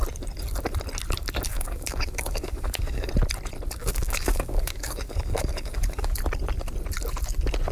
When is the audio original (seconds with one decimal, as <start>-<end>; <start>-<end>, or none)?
0.0-1.5; 3.1-3.8; 6.1-7.7